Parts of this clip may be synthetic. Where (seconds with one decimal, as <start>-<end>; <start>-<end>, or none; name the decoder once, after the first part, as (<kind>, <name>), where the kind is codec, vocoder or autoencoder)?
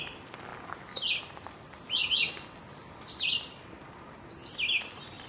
none